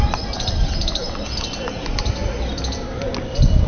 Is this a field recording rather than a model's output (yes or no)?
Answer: yes